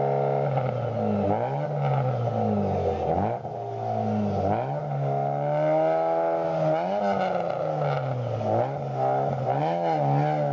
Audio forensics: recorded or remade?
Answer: recorded